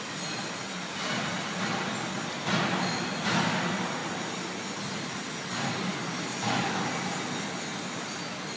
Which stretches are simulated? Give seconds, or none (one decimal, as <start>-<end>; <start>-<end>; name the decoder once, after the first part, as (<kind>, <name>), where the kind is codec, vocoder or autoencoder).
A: none